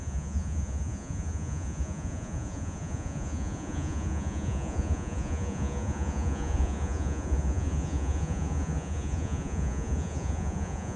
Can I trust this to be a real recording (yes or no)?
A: no